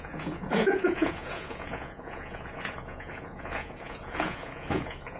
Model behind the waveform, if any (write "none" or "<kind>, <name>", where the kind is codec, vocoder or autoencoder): vocoder, Vocos